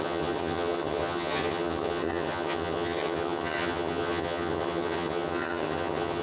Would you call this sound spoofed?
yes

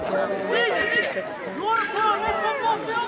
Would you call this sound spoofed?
no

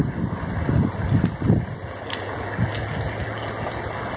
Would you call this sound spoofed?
no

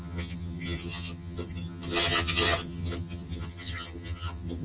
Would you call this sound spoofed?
yes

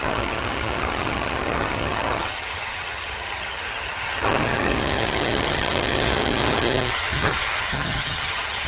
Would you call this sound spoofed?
yes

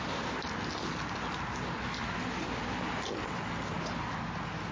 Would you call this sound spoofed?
no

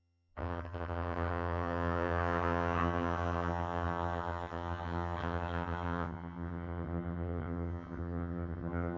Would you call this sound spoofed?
yes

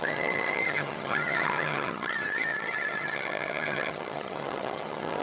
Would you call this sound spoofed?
yes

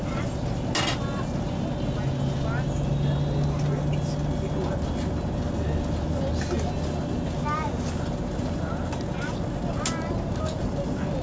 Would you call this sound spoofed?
no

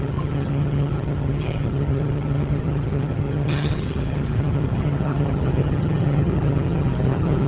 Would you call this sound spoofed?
yes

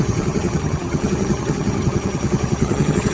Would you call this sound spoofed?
yes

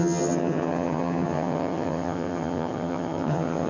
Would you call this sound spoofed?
yes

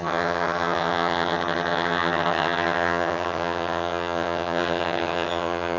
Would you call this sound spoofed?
yes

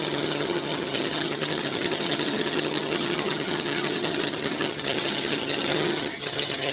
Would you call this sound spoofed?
yes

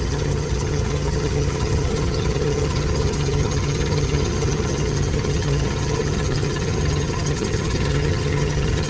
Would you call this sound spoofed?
yes